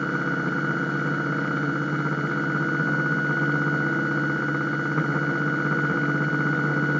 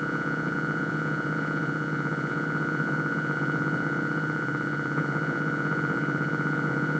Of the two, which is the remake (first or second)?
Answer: second